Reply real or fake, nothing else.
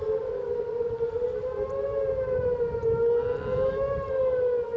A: real